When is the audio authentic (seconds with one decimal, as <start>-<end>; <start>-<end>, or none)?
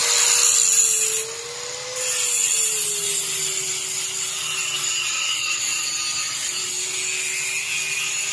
0.0-5.1; 5.9-8.3